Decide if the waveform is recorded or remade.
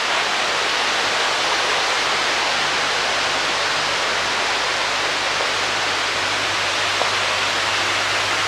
recorded